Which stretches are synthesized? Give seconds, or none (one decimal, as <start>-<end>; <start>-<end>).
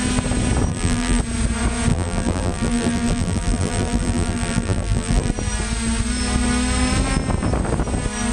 0.7-1.2; 1.9-5.3